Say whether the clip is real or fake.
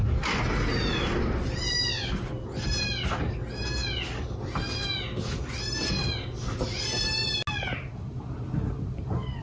real